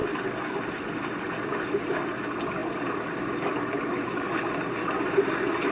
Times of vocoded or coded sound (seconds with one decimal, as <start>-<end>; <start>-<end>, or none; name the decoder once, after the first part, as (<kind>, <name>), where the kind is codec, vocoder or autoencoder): none